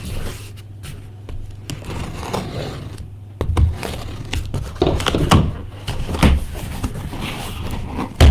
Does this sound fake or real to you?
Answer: real